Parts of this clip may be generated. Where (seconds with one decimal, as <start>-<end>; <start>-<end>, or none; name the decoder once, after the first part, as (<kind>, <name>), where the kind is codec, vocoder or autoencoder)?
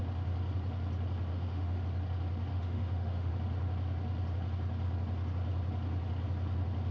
1.3-1.8 (autoencoder, DAC-VAE); 2.5-3.3